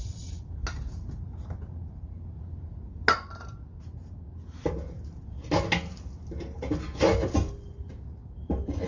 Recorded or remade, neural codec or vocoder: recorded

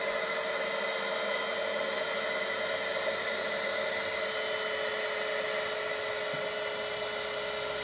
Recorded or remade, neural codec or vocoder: recorded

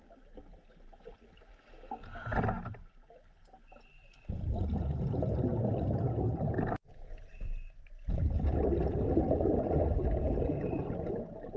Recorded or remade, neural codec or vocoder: recorded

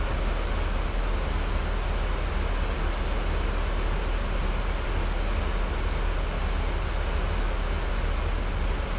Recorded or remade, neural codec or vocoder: recorded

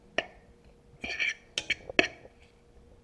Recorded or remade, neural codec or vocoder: recorded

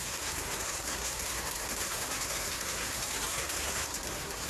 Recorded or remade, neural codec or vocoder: remade, codec, SNAC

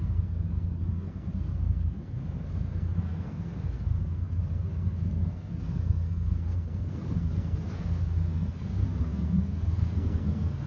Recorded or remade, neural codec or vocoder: remade, codec, SNAC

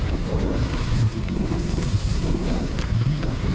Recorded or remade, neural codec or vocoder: remade, codec, SNAC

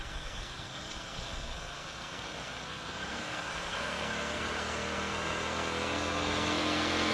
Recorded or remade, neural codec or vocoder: remade, codec, SNAC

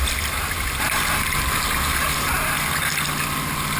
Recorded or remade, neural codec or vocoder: recorded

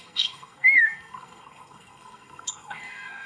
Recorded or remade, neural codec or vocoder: remade, codec, SNAC